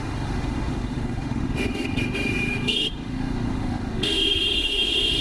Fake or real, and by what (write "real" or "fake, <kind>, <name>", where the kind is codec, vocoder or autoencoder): fake, autoencoder, DAC-VAE